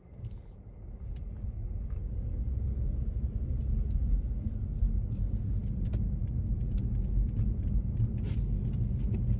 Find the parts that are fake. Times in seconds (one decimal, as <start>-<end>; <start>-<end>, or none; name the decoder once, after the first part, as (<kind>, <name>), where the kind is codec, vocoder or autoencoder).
none